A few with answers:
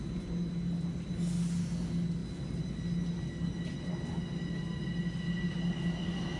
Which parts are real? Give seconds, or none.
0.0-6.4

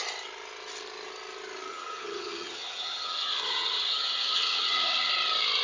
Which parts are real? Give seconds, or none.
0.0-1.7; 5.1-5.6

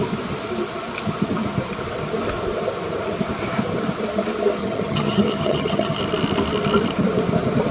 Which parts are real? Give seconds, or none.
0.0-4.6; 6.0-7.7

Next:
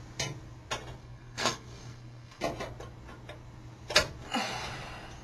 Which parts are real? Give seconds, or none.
0.0-1.0; 2.4-5.2